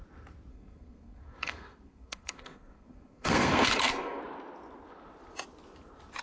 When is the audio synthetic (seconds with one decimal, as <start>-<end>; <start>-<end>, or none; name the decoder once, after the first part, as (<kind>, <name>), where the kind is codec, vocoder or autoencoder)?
0.5-4.2 (codec, SNAC)